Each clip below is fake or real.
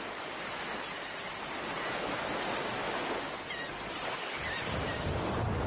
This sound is real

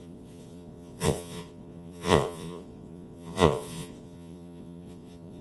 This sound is fake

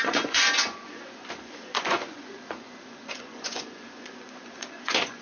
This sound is fake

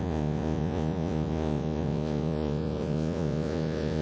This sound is fake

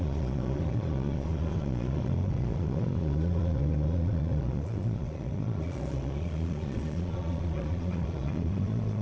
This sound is fake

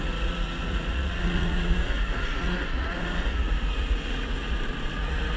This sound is fake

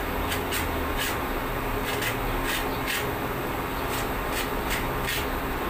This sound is real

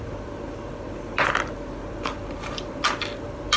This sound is real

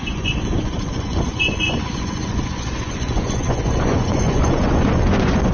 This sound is fake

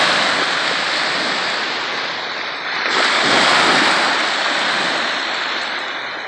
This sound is real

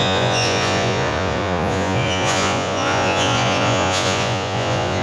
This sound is fake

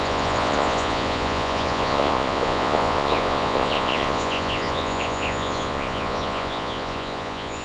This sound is fake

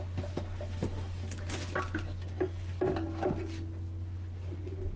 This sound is real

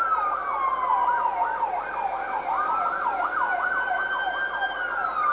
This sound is real